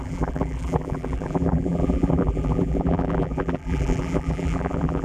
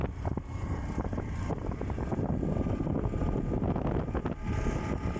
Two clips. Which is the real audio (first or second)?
second